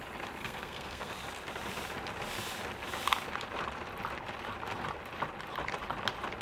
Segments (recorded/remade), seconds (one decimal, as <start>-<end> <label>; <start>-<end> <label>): 0.0-0.4 recorded; 0.4-1.1 remade; 1.1-6.4 recorded